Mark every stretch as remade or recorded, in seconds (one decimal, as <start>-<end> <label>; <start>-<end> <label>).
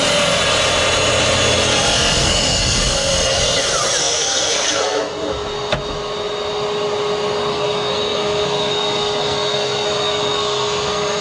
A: 0.0-2.2 recorded; 2.2-3.1 remade; 3.1-4.0 recorded; 4.0-5.1 remade; 5.1-7.5 recorded; 7.5-11.2 remade